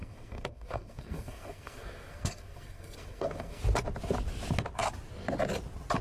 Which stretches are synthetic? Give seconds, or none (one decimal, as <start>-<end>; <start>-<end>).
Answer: 0.0-3.6